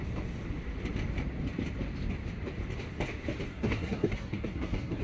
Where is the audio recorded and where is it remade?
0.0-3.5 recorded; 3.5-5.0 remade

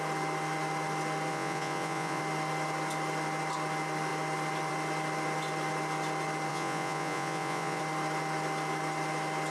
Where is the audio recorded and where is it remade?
0.0-1.3 recorded; 1.3-2.2 remade; 2.2-6.5 recorded; 6.5-7.8 remade; 7.8-9.5 recorded

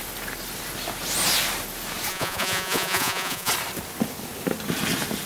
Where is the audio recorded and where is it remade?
0.0-2.1 recorded; 2.1-3.5 remade; 3.5-5.3 recorded

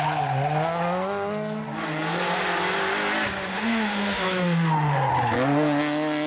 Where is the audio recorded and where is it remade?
0.0-3.5 recorded; 3.5-5.1 remade; 5.1-6.3 recorded